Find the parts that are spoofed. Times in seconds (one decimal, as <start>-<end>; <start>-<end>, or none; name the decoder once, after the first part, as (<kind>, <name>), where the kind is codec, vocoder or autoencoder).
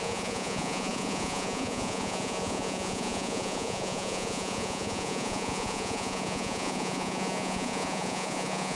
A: 0.0-8.7 (vocoder, Vocos)